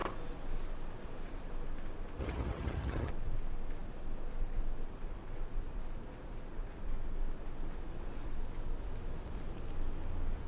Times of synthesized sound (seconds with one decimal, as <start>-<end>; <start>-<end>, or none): 2.2-3.1